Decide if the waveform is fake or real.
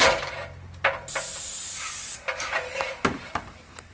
real